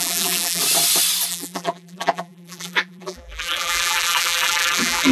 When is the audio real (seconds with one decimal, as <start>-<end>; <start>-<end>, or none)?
0.6-1.3